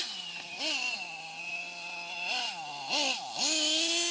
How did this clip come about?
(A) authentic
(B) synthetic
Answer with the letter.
A